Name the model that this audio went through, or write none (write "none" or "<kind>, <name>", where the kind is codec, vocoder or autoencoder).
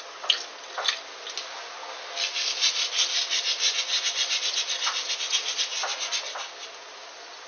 none